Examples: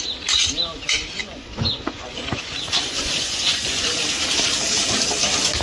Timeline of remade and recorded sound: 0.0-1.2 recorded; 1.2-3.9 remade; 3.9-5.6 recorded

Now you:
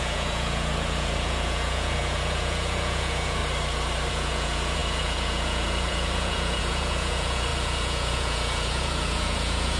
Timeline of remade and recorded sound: 0.0-3.4 remade; 3.4-4.1 recorded; 4.1-9.8 remade

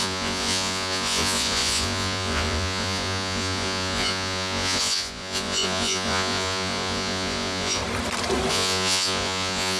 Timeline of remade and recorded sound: 0.0-7.8 remade; 7.8-8.5 recorded; 8.5-9.8 remade

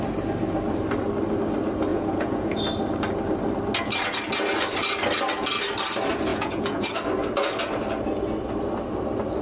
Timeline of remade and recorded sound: 0.0-1.9 recorded; 1.9-2.6 remade; 2.6-6.3 recorded; 6.3-7.0 remade; 7.0-9.4 recorded

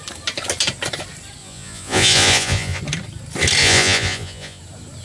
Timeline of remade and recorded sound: 0.0-1.4 recorded; 1.4-2.8 remade; 2.8-3.6 recorded; 3.6-4.6 remade; 4.6-5.0 recorded

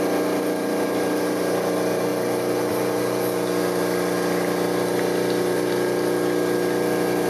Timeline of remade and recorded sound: 0.0-7.3 recorded

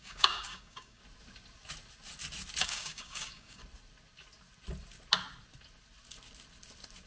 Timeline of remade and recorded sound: 0.0-1.0 remade; 1.0-2.6 recorded; 2.6-3.6 remade; 3.6-7.1 recorded